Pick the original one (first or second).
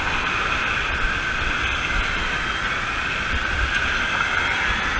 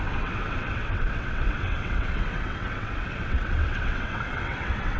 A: first